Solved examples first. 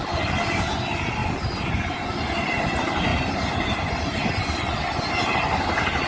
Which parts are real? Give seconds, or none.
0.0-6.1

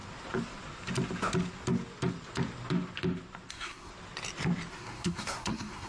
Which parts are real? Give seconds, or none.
0.0-3.5; 3.9-4.7

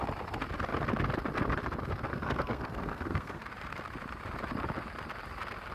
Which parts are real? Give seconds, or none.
0.0-2.1; 3.4-5.7

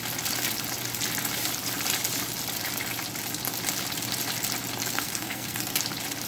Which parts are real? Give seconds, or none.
0.0-4.8; 5.8-6.3

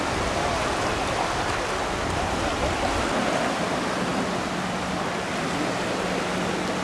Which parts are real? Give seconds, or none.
0.0-6.8

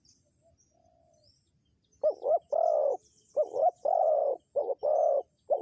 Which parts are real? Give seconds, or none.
0.0-5.6

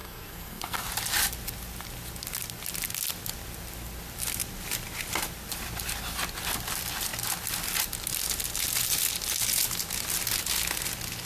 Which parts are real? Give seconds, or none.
0.9-11.3